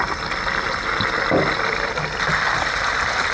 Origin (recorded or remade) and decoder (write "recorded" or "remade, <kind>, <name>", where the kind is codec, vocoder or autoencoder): recorded